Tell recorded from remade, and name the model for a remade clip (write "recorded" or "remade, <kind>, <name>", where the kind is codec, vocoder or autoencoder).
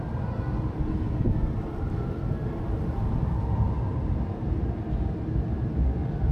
recorded